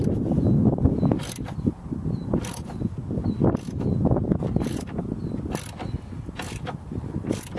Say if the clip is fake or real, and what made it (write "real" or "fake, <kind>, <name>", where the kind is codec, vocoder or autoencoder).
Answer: real